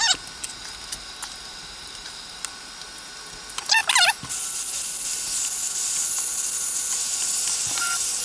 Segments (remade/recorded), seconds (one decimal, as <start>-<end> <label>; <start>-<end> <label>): 0.0-1.6 recorded; 1.6-2.4 remade; 2.4-8.2 recorded